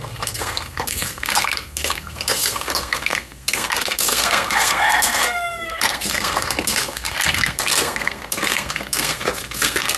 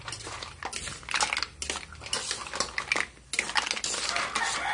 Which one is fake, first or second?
first